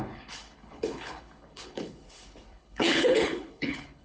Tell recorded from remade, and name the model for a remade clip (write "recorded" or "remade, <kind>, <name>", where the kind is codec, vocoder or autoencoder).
remade, codec, HILCodec